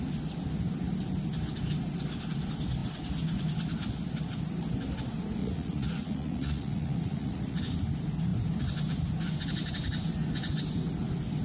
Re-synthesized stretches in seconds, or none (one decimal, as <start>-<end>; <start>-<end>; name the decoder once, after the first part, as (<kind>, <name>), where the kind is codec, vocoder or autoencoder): 5.4-7.6 (vocoder, Vocos)